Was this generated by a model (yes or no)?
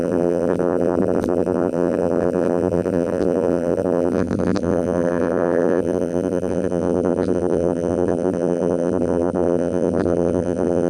yes